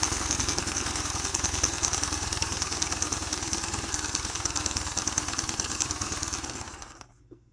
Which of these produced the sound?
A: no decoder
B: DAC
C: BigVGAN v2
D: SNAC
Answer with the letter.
D